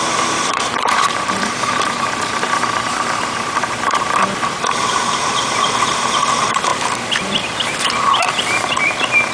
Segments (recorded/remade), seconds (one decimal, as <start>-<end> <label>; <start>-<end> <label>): 0.0-9.3 remade